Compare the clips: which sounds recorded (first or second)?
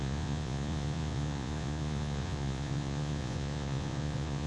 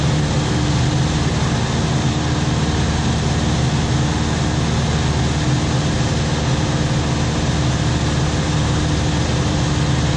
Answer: second